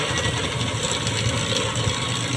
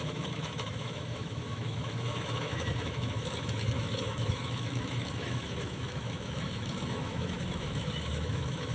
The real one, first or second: first